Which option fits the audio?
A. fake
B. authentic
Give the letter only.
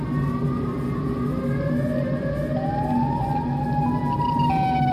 B